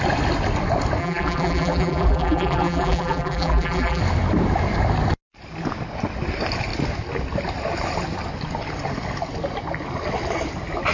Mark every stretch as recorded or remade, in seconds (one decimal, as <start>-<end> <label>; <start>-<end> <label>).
0.0-1.0 recorded; 1.0-4.0 remade; 4.0-10.9 recorded